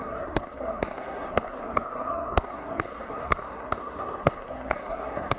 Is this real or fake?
fake